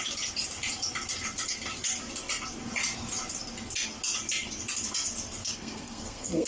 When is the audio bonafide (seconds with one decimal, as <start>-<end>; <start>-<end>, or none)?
0.0-5.4